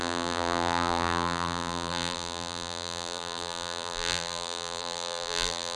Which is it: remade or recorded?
remade